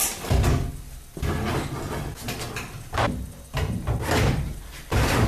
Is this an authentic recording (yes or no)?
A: yes